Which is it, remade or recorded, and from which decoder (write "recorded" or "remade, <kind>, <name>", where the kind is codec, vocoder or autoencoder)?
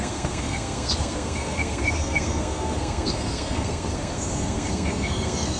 remade, codec, SNAC